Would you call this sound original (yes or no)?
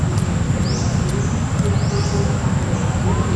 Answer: yes